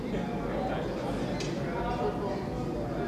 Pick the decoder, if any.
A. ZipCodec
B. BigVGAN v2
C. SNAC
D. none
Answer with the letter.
D